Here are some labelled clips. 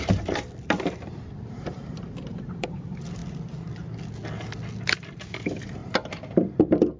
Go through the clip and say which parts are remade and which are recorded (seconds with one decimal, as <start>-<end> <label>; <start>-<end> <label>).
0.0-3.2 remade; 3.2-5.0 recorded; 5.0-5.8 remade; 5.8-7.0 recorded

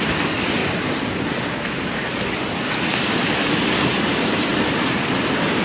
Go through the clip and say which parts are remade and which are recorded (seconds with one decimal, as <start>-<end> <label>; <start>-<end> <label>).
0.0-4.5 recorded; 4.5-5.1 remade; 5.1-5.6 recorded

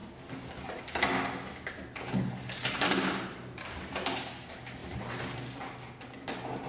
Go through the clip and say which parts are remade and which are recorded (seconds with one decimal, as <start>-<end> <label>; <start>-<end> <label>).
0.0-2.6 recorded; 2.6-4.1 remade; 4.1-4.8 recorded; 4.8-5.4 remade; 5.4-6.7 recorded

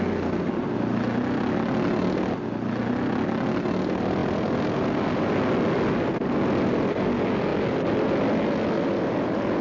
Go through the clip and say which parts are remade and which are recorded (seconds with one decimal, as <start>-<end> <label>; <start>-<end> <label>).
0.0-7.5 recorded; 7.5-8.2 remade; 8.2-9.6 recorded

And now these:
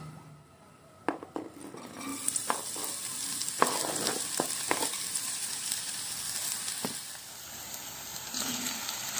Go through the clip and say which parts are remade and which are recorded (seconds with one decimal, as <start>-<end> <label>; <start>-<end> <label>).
0.0-5.1 recorded; 5.1-5.9 remade; 5.9-8.1 recorded; 8.1-8.7 remade; 8.7-9.2 recorded